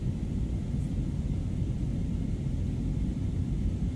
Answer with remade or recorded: recorded